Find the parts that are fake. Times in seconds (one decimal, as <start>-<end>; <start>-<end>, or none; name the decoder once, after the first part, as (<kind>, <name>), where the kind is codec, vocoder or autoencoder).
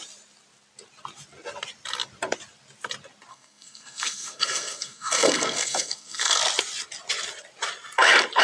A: 3.3-6.4 (codec, SNAC)